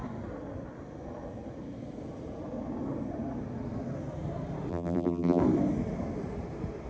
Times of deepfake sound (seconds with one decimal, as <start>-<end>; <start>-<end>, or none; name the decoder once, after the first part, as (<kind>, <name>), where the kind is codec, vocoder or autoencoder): 4.7-5.4 (vocoder, BigVGAN v2)